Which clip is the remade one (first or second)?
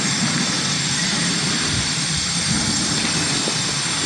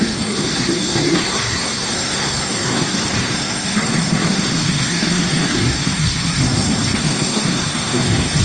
second